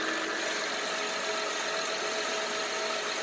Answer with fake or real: real